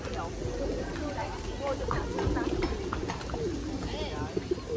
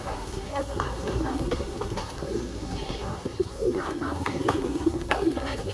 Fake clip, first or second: second